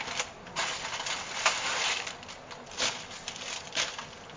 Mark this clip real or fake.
real